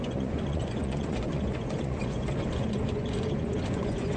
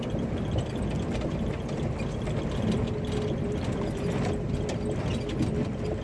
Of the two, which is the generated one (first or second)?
first